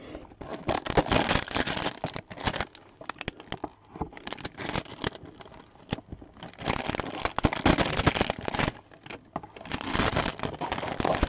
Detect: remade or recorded recorded